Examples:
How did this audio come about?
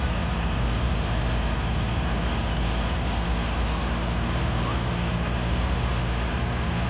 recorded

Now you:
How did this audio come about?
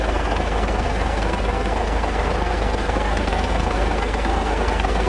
remade